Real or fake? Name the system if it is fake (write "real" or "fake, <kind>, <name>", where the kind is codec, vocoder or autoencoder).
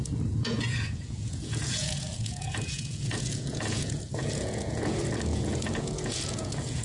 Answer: fake, vocoder, Vocos